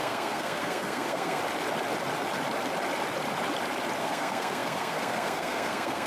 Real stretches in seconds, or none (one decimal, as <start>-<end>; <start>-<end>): 1.4-4.0